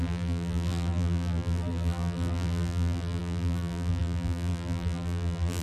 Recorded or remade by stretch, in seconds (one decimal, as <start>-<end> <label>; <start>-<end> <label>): 0.0-5.6 remade